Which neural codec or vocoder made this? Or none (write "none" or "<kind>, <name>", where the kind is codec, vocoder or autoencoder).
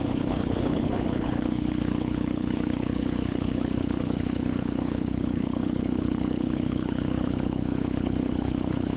codec, HILCodec